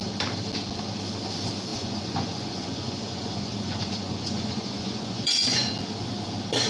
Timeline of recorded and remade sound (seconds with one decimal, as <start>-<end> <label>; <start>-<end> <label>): 0.0-1.7 recorded; 1.7-5.7 remade; 5.7-6.7 recorded